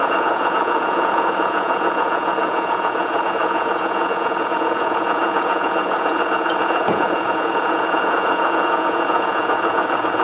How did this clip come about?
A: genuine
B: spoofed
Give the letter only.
B